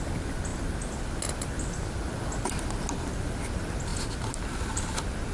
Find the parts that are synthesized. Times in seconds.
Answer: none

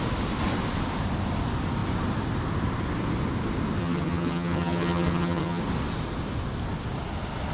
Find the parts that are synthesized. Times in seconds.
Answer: 3.8-5.6 (vocoder, HiFi-GAN)

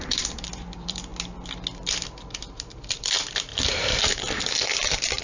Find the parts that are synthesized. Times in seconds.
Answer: 0.0-1.1 (vocoder, BigVGAN v2); 2.8-3.5

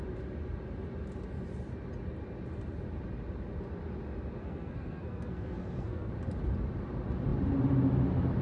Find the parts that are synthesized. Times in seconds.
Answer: 4.4-6.1 (codec, SNAC)

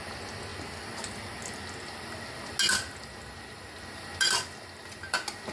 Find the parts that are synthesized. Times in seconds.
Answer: none

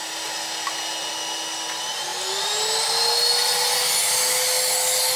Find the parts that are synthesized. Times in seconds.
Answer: none

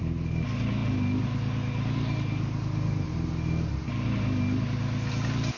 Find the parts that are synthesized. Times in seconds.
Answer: none